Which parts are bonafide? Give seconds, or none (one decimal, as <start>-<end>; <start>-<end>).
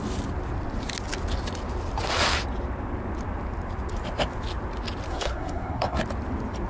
0.0-5.1; 6.0-6.7